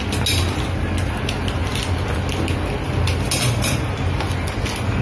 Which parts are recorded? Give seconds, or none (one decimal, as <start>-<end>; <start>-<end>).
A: 0.0-5.0